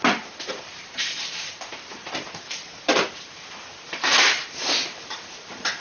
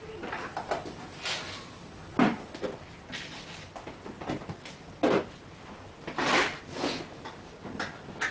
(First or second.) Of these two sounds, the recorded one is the second